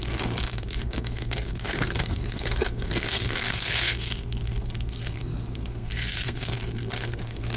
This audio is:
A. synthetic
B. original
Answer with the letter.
A